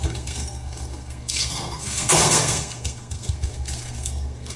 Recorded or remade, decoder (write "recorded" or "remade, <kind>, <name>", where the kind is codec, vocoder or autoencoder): remade, codec, SNAC